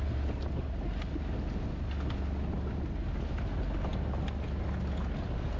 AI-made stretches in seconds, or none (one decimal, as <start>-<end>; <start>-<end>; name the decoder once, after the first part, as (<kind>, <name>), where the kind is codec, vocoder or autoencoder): none